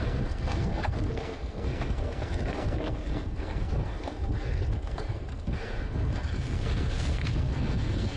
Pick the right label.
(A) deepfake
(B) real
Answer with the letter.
A